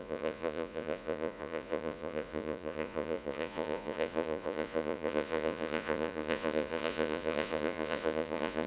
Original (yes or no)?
no